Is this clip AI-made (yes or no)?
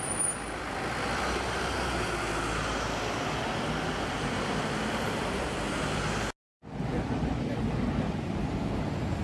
no